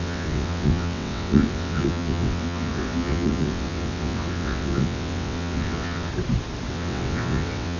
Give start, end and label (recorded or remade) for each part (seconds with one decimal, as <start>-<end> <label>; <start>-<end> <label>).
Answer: 0.0-6.1 remade; 6.1-6.7 recorded; 6.7-7.8 remade